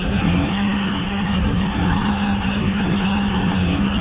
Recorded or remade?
remade